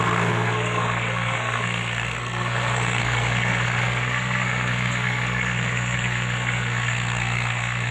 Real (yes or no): no